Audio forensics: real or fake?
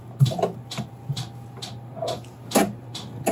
real